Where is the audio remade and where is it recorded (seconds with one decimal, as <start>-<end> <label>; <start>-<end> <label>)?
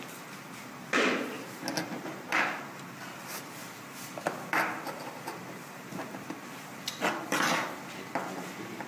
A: 0.0-3.6 recorded; 3.6-8.2 remade; 8.2-8.9 recorded